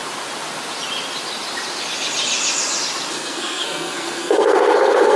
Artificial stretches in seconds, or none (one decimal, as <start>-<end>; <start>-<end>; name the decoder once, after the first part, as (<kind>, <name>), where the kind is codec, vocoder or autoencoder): 3.1-5.2 (codec, SNAC)

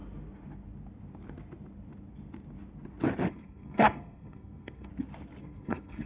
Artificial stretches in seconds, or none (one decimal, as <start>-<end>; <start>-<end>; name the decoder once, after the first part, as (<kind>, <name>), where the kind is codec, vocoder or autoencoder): 3.3-4.9 (codec, SNAC); 5.4-6.1

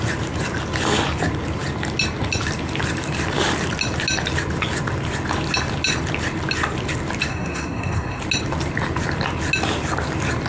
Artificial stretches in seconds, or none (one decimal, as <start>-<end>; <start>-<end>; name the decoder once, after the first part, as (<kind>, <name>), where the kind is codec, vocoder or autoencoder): 7.3-8.2 (codec, SNAC)

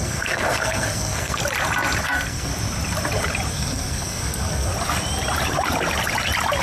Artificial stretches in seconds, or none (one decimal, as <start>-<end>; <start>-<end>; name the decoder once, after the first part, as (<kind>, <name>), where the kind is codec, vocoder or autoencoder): 0.0-1.4 (codec, SNAC); 2.0-2.5; 3.5-4.7

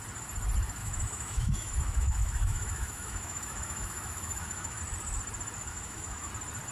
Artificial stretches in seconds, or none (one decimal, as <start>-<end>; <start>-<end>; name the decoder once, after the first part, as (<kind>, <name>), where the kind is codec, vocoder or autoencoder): 0.8-4.8 (autoencoder, DAC-VAE); 5.7-6.3

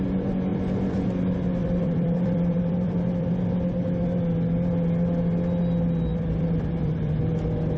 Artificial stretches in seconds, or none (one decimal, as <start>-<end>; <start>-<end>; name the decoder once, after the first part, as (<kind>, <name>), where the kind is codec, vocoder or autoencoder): 0.5-1.1 (vocoder, BigVGAN v2); 1.6-3.3; 6.1-7.2